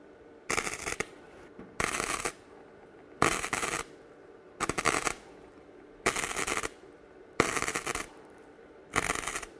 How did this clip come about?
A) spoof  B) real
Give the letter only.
A